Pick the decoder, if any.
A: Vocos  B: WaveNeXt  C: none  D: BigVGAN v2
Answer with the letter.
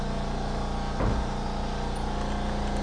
C